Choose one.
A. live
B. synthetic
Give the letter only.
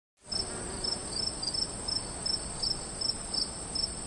A